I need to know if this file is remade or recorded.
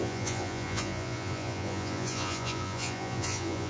remade